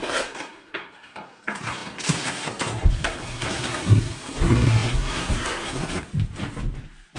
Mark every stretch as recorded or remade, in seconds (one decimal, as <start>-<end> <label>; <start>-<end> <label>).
0.0-6.1 remade; 6.1-7.2 recorded